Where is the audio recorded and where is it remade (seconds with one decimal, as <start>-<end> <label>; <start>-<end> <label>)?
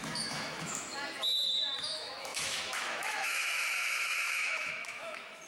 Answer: 0.0-0.9 remade; 0.9-1.8 recorded; 1.8-5.5 remade